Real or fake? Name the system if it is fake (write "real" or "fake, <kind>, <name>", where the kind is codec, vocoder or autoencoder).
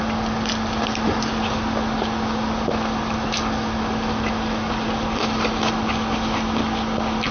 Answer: real